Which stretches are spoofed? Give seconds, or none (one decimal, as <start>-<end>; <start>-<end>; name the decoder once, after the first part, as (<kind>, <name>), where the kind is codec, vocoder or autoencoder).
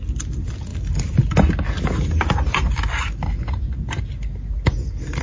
0.7-1.5 (vocoder, BigVGAN v2)